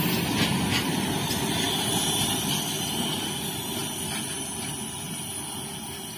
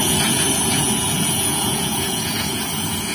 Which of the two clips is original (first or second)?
first